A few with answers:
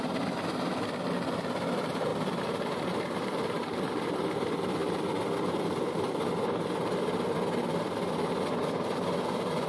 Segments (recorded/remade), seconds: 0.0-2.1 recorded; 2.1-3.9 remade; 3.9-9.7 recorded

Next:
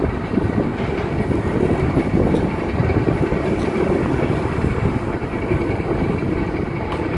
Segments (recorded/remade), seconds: 0.0-0.7 remade; 0.7-2.3 recorded; 2.3-7.2 remade

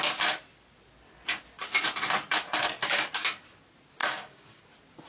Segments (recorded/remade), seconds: 0.0-4.0 recorded; 4.0-4.6 remade; 4.6-5.1 recorded